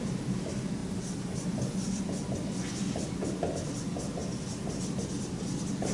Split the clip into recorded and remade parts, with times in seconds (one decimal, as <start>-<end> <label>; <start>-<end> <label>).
0.0-4.2 recorded; 4.2-5.0 remade; 5.0-5.9 recorded